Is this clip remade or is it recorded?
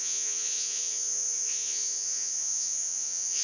remade